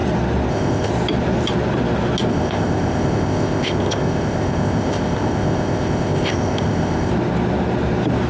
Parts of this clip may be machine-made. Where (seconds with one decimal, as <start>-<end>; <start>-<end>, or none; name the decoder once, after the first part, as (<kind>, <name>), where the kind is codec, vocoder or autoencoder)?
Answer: 0.5-0.9 (codec, ZipCodec); 2.3-7.1